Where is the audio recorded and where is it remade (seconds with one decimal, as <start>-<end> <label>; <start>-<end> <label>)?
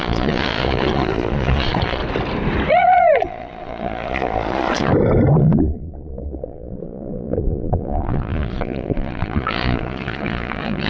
0.0-2.0 remade; 2.0-2.7 recorded; 2.7-4.9 remade; 4.9-5.4 recorded; 5.4-10.9 remade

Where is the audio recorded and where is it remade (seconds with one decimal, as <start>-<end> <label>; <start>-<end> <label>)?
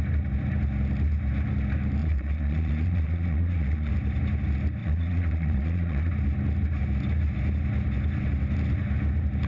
0.0-2.0 recorded; 2.0-3.9 remade; 3.9-4.8 recorded; 4.8-6.1 remade; 6.1-9.5 recorded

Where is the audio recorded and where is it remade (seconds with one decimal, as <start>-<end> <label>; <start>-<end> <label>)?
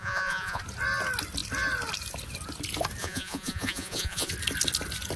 0.0-0.6 remade; 0.6-3.0 recorded; 3.0-4.3 remade; 4.3-5.2 recorded